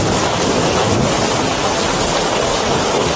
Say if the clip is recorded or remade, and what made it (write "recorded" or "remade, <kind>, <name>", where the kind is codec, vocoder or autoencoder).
recorded